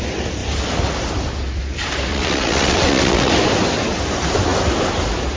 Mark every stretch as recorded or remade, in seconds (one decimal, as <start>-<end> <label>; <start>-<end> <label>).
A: 0.0-2.1 recorded; 2.1-3.3 remade; 3.3-5.4 recorded